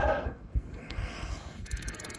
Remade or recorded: remade